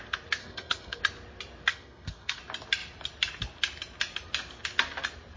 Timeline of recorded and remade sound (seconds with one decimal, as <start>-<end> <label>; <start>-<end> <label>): 0.0-0.4 recorded; 0.4-1.0 remade; 1.0-1.7 recorded; 1.7-2.4 remade; 2.4-5.4 recorded